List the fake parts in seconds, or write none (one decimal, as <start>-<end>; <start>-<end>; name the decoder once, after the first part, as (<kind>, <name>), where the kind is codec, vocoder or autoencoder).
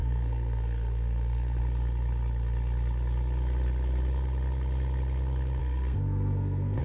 0.0-1.6 (codec, SNAC); 5.6-6.8